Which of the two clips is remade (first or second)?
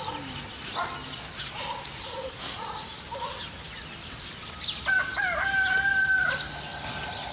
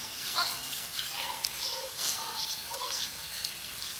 second